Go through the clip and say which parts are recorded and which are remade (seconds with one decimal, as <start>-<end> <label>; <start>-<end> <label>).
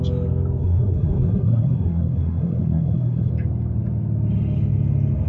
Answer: 0.0-0.6 recorded; 0.6-3.3 remade; 3.3-5.3 recorded